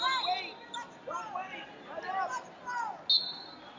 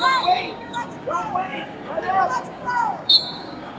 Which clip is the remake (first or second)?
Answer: second